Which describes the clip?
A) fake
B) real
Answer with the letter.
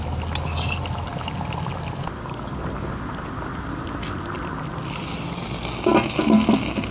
B